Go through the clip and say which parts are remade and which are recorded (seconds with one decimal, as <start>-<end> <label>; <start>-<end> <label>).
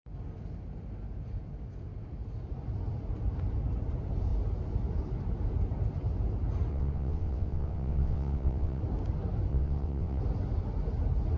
0.0-6.7 recorded; 6.7-8.8 remade; 8.8-9.5 recorded; 9.5-10.2 remade; 10.2-11.4 recorded